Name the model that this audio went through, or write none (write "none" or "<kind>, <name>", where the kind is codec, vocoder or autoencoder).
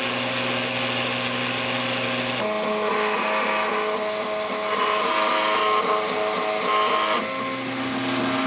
none